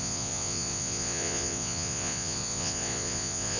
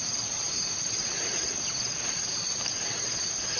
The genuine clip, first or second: second